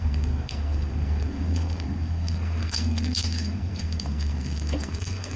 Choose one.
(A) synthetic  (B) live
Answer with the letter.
A